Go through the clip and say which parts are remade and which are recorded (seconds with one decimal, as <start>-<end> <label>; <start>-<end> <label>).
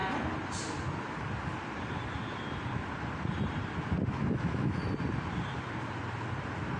0.0-4.1 recorded; 4.1-4.8 remade; 4.8-6.8 recorded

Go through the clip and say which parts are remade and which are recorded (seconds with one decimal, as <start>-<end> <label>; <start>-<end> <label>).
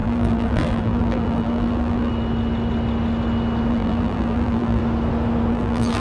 0.0-2.1 remade; 2.1-3.7 recorded; 3.7-4.8 remade; 4.8-5.5 recorded; 5.5-6.0 remade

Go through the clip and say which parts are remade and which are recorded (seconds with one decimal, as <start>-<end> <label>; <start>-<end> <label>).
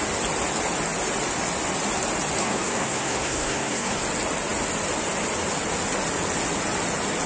0.0-2.4 recorded; 2.4-4.0 remade; 4.0-7.3 recorded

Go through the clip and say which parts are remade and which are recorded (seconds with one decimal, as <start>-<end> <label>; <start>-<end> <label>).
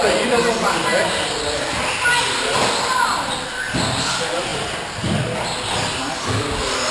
0.0-6.9 recorded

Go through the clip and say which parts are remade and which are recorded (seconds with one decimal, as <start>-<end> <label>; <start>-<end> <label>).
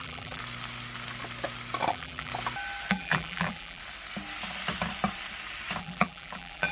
0.0-0.4 remade; 0.4-1.9 recorded; 1.9-2.3 remade; 2.3-2.9 recorded; 2.9-3.8 remade; 3.8-5.8 recorded; 5.8-6.7 remade